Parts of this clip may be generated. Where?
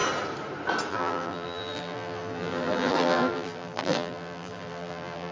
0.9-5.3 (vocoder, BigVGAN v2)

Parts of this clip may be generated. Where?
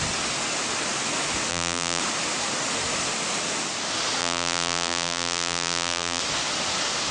1.5-2.0 (vocoder, BigVGAN v2); 4.2-6.2